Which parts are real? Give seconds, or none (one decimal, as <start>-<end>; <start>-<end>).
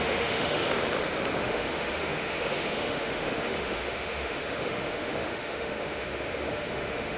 0.6-1.4